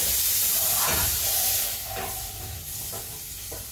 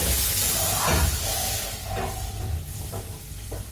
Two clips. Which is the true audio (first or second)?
second